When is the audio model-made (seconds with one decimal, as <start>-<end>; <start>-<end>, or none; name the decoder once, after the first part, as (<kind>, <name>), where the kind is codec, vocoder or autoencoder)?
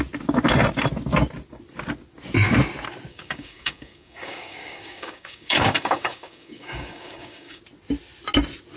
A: 3.1-7.6 (codec, DAC)